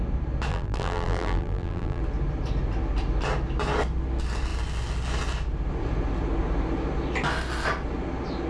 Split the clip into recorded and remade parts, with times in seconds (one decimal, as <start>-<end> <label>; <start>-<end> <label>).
0.0-0.5 recorded; 0.5-2.0 remade; 2.0-8.5 recorded